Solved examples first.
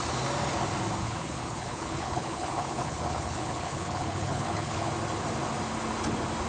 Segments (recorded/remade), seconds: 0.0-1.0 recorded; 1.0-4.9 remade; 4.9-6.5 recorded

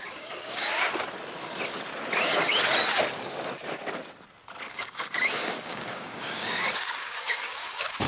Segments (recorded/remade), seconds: 0.0-0.7 remade; 0.7-2.2 recorded; 2.2-2.6 remade; 2.6-4.7 recorded; 4.7-8.1 remade